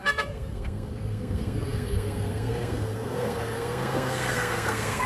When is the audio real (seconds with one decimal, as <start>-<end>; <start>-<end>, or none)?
none